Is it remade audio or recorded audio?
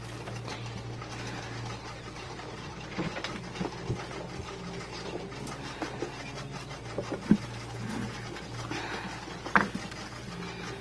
recorded